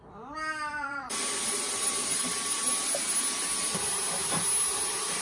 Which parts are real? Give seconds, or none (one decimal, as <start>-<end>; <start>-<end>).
0.0-0.7; 2.7-5.2